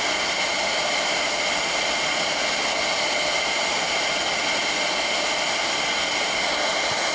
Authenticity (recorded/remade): recorded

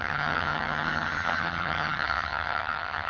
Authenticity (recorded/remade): remade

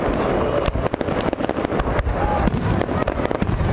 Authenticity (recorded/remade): recorded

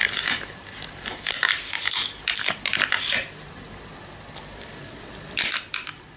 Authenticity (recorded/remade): recorded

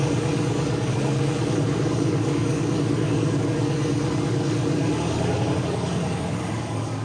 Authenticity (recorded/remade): remade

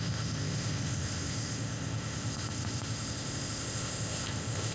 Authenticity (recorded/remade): remade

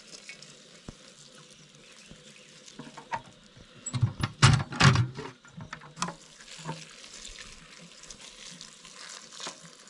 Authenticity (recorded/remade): recorded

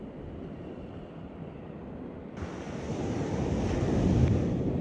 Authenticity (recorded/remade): recorded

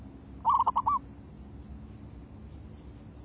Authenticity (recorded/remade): recorded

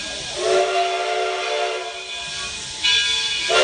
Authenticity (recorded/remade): recorded